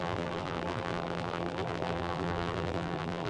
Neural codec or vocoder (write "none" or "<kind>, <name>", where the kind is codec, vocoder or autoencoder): vocoder, BigVGAN v2